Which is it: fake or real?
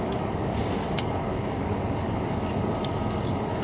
fake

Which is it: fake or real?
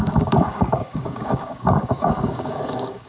fake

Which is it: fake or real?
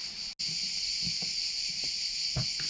real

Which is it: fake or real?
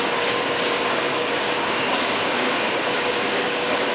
fake